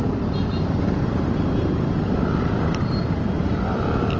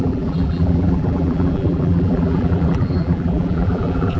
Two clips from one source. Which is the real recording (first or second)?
first